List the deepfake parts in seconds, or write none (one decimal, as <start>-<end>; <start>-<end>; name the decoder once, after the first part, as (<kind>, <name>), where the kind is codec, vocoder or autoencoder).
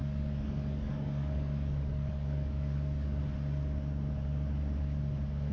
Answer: 0.0-3.2 (codec, DAC)